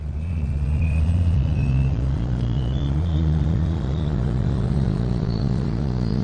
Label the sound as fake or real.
fake